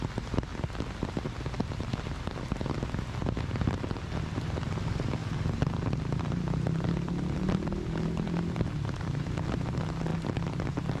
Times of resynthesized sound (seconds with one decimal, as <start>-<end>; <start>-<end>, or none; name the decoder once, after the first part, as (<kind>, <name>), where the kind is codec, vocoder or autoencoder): none